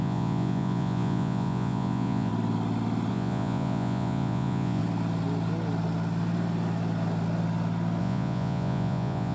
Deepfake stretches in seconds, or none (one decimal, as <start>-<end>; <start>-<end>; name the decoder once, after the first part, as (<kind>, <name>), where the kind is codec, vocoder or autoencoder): 0.0-2.3 (vocoder, Vocos); 3.1-4.8; 8.0-9.3